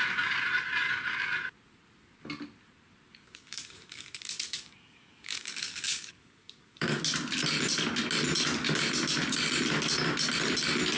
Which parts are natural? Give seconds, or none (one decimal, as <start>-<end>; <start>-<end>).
0.0-3.1; 7.0-11.0